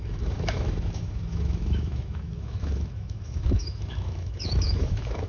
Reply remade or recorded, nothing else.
remade